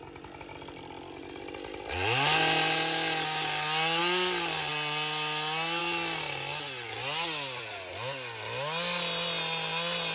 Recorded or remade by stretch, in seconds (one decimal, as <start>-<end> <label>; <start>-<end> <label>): 0.0-10.1 recorded